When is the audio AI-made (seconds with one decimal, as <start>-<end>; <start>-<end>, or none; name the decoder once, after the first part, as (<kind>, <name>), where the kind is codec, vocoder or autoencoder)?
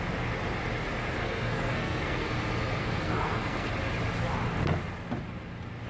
1.2-2.3 (codec, SNAC); 2.8-3.7